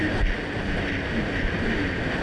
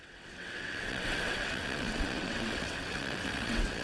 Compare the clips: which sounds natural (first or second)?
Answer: first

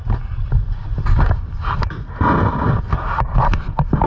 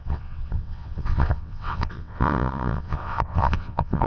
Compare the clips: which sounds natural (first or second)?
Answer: first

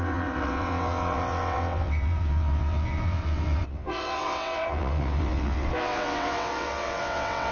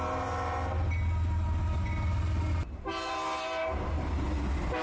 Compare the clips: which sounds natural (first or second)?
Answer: second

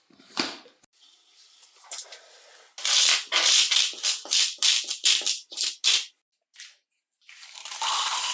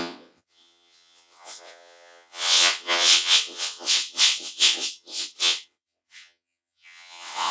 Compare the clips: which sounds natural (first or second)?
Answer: first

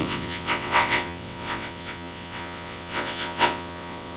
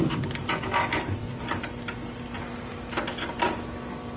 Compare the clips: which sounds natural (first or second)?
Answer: second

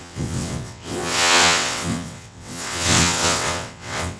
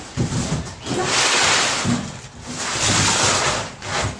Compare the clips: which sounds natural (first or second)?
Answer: second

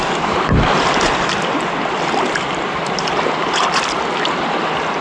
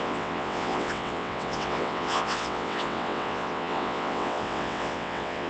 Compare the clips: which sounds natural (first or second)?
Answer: first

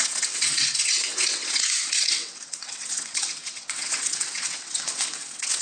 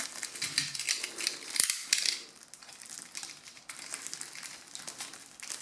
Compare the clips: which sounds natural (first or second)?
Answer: second